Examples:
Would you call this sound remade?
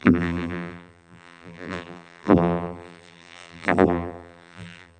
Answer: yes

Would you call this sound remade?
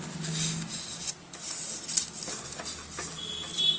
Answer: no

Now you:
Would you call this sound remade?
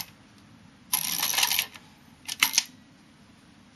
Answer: no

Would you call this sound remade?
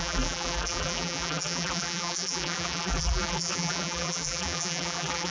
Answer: yes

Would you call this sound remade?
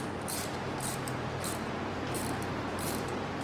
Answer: yes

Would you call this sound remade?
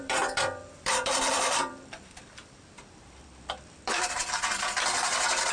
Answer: yes